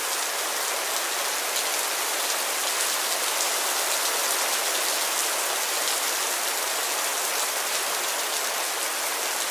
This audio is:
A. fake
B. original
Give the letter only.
B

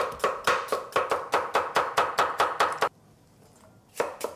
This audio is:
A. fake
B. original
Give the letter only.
B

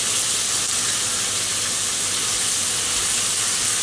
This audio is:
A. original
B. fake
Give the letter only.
A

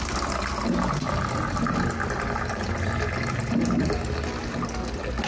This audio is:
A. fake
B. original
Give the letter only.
B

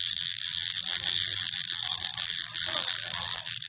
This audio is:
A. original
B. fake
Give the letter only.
B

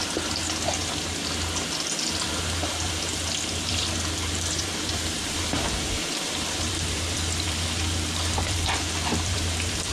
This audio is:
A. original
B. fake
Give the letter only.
B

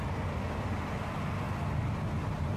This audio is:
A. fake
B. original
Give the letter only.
B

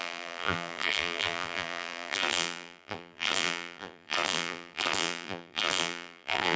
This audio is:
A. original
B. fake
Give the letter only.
B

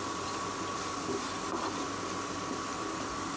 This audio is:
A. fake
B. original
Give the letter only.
A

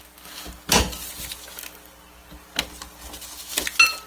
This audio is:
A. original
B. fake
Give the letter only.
A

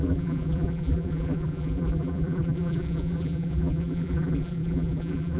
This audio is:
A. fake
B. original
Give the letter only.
A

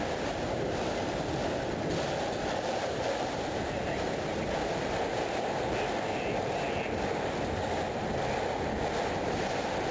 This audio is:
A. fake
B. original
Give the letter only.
A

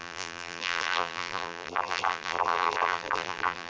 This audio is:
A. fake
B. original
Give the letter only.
A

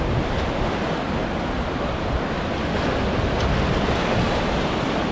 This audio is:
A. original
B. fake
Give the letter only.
A